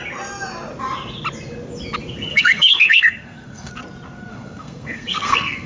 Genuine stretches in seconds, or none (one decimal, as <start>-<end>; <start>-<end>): 0.0-2.3; 3.7-4.3